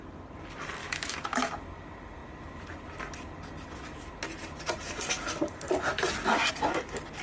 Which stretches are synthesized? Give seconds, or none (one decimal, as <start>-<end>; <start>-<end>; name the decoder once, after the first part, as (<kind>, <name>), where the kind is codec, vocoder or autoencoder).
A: 0.8-1.5 (autoencoder, DAC-VAE)